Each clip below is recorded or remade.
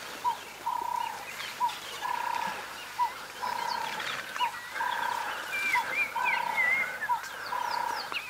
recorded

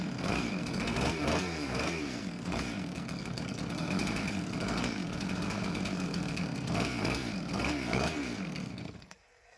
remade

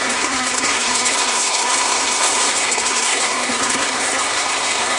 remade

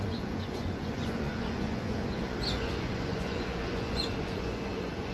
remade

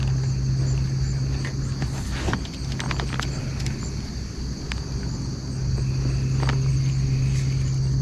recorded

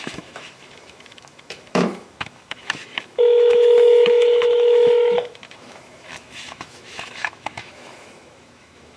remade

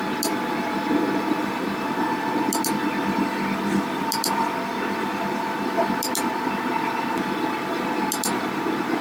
remade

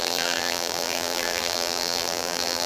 remade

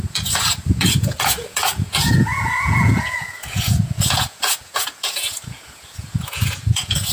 remade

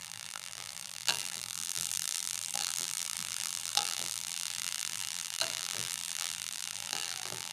remade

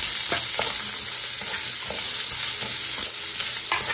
recorded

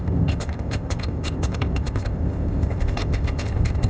remade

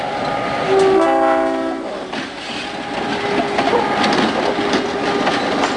recorded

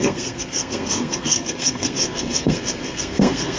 remade